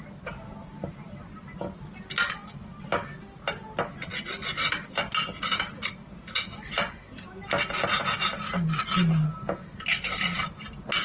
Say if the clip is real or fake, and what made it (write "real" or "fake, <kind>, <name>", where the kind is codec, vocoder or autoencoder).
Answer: real